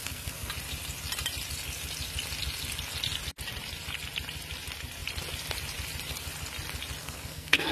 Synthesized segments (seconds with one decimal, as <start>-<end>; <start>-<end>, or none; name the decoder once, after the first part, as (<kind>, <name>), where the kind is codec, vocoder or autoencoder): 0.0-0.5 (codec, SNAC); 7.0-7.7